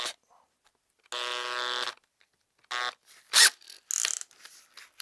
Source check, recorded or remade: recorded